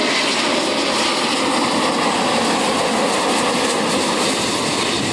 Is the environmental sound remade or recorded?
recorded